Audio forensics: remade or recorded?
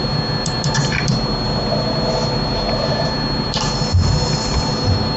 remade